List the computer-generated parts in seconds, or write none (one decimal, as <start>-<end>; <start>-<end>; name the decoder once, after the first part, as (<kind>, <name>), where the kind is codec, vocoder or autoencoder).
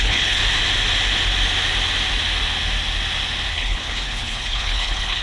0.0-0.4 (codec, HILCodec); 3.5-5.2